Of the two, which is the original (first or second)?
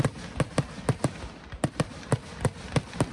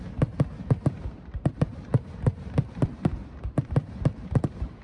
first